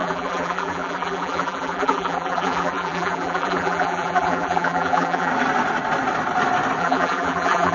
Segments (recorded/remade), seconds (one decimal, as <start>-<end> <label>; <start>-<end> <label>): 0.0-5.3 remade; 5.3-6.8 recorded; 6.8-7.7 remade